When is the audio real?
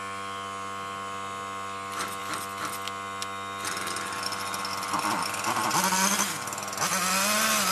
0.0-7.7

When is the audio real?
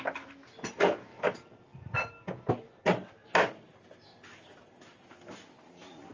0.0-6.1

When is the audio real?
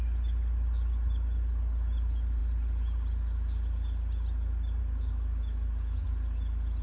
0.0-6.8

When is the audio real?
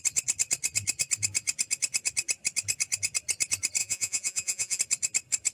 0.0-3.8; 4.8-5.5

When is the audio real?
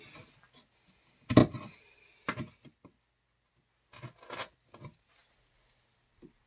0.0-6.5